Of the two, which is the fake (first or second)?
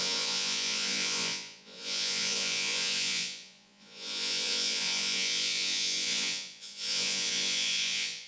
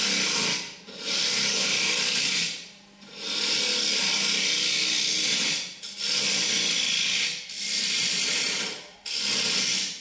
first